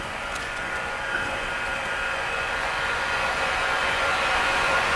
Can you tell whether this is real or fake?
fake